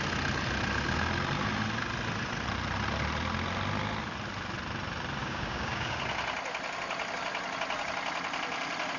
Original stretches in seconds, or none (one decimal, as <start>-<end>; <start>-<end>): 0.0-5.2; 6.0-9.0